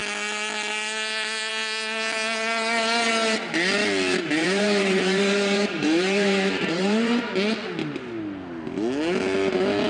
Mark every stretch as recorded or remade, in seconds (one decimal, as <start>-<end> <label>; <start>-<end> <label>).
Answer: 0.0-4.4 recorded; 4.4-7.3 remade; 7.3-9.9 recorded